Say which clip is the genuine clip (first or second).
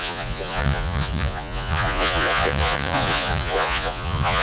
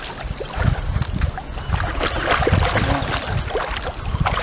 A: second